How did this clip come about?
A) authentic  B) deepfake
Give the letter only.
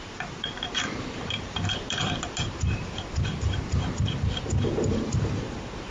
B